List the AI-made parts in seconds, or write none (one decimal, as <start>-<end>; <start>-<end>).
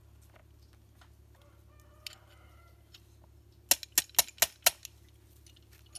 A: none